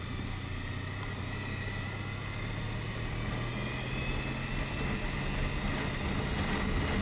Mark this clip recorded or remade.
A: recorded